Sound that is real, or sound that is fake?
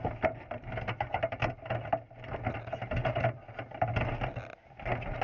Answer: real